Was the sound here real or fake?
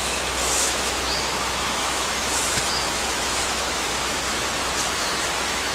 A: fake